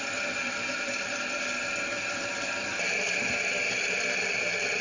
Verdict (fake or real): real